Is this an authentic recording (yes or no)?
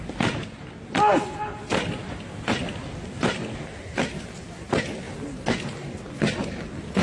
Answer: yes